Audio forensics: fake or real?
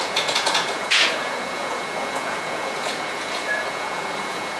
fake